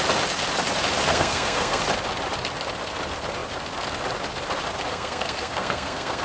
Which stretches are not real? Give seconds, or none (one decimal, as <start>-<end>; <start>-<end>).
1.1-1.8; 4.9-6.2